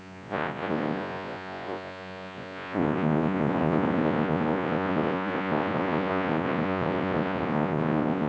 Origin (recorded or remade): remade